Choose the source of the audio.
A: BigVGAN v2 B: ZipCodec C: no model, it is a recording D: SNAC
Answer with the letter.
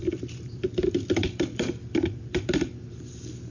C